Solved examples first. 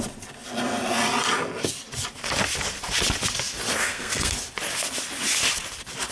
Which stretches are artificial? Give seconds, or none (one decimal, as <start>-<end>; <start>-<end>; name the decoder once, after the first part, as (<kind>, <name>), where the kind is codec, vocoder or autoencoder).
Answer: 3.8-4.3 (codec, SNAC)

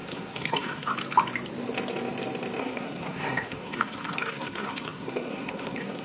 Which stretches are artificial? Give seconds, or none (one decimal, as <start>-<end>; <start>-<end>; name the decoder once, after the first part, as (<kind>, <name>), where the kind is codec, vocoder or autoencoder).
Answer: 0.0-0.9 (codec, SNAC); 2.6-6.0

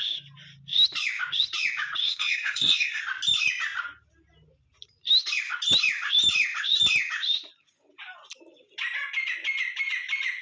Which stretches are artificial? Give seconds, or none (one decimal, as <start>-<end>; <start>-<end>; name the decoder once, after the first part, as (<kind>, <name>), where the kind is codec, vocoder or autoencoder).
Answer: 2.0-3.0 (codec, SNAC)

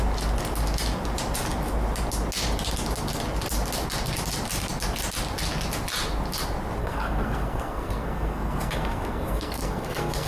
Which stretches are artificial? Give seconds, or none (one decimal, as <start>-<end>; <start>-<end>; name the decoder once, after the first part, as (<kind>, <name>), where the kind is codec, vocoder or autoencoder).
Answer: 6.8-10.3 (codec, SNAC)

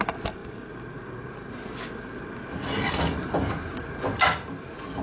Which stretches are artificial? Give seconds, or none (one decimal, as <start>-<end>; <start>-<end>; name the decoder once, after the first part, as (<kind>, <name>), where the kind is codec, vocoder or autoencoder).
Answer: none

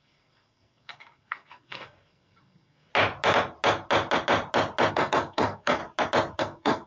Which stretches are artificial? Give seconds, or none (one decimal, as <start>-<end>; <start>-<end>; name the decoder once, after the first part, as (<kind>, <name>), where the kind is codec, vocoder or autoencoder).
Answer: 0.0-2.9 (codec, SNAC); 4.9-5.8; 6.4-6.9

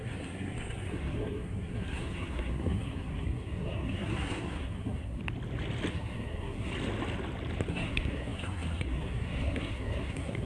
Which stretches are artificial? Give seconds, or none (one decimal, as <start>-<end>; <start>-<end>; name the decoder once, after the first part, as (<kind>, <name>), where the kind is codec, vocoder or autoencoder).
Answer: 0.0-5.2 (codec, SNAC); 5.9-6.7; 7.7-10.5